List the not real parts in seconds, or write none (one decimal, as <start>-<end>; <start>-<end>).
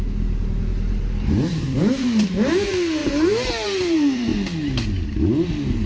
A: 0.0-4.3; 5.5-5.9